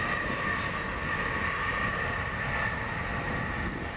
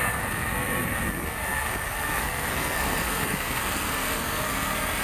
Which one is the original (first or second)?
first